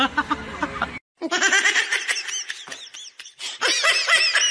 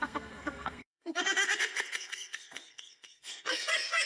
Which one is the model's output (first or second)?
second